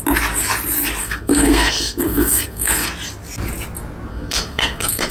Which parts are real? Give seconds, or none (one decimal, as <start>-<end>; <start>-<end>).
0.0-1.0; 2.9-4.1